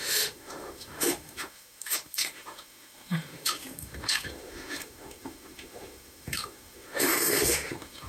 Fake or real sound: fake